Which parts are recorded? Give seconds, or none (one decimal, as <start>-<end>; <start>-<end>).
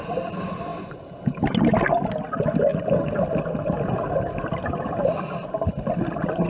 0.0-0.7; 1.6-6.5